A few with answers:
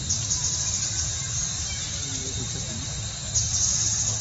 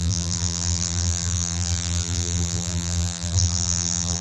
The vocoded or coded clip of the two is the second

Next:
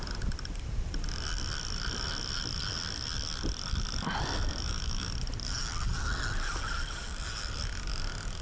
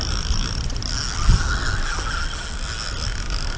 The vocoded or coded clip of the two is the first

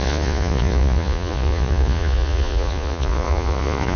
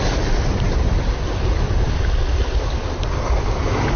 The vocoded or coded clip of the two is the first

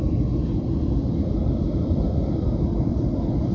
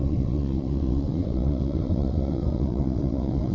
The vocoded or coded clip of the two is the second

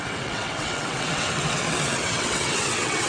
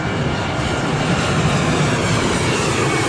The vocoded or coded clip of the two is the first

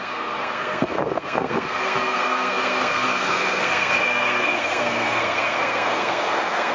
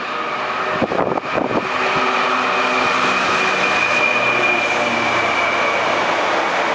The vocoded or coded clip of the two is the first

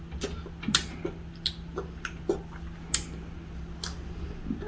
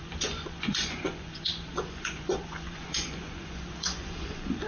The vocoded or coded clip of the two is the second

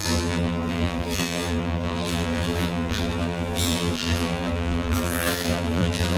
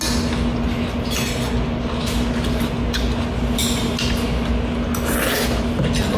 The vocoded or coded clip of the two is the first